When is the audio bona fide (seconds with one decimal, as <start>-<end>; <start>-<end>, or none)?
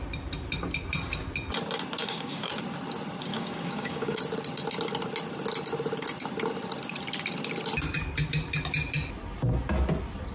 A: 0.0-2.0; 2.5-3.3; 4.2-10.3